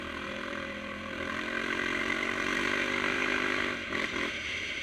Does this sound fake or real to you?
fake